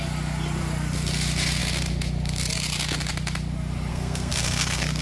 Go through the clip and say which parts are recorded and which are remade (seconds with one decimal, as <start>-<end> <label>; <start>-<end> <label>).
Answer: 0.0-3.9 recorded; 3.9-5.0 remade